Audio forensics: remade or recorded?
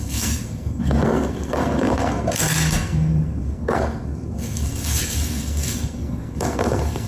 remade